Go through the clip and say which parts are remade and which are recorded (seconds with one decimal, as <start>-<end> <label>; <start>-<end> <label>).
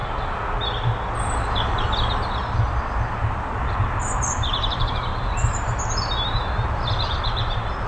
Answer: 0.0-3.2 recorded; 3.2-7.4 remade; 7.4-7.9 recorded